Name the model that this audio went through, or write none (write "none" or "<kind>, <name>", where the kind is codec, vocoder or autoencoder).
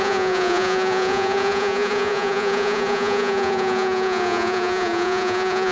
vocoder, Vocos